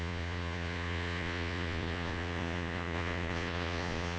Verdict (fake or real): fake